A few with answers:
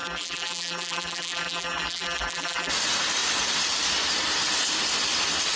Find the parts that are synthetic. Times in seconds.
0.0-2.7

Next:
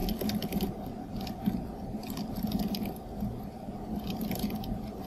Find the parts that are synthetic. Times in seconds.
none

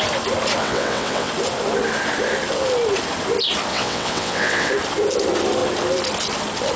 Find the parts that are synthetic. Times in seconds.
0.6-1.3; 3.7-4.7

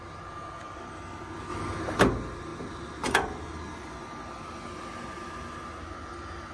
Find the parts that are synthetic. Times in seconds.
none

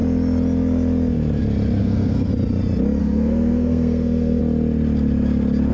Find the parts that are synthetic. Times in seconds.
1.8-2.3; 3.0-4.4

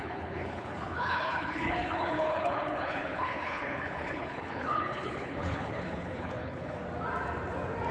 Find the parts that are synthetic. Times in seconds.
0.0-6.8

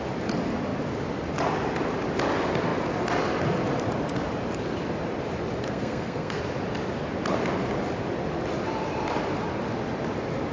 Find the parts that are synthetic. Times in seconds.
5.6-6.4